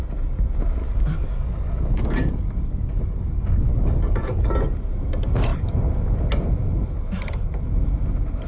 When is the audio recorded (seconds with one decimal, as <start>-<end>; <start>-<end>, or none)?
0.0-0.8; 4.5-8.5